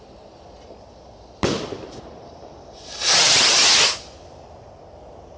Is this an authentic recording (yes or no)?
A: no